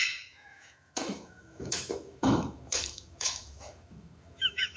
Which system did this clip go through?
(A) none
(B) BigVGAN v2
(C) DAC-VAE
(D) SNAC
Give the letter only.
C